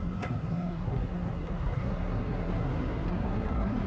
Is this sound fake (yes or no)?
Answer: yes